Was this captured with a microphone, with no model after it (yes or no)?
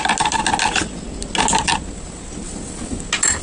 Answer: yes